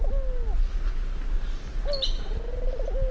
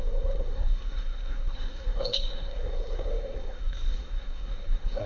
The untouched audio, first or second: first